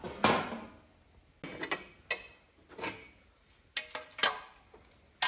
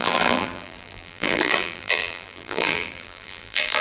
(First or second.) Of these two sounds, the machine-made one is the second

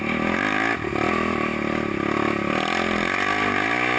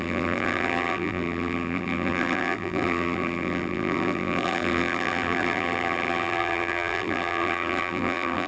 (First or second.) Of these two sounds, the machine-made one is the second